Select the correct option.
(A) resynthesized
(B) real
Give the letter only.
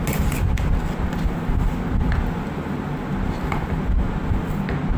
B